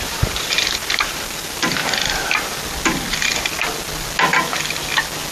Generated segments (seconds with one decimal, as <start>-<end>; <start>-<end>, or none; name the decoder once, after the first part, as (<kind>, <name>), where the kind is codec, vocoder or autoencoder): 0.0-1.8 (vocoder, BigVGAN v2)